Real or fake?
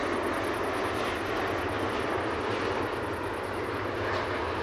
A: real